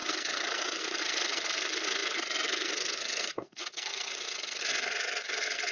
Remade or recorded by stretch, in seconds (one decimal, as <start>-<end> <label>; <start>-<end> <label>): 0.0-5.7 remade